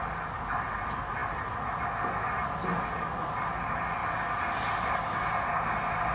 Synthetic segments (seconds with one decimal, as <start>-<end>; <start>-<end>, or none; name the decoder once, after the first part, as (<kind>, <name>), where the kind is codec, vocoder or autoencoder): none